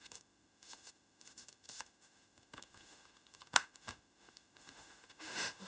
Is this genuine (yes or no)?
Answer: no